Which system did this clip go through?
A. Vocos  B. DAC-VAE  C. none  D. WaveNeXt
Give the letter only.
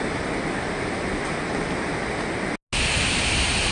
C